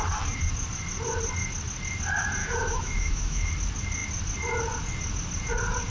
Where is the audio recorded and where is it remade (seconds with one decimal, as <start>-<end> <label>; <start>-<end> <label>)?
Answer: 0.0-2.4 recorded; 2.4-3.5 remade; 3.5-5.9 recorded